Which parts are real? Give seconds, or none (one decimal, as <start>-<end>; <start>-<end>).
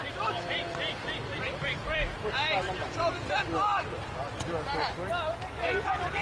0.0-6.2